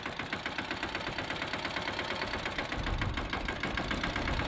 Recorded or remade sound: recorded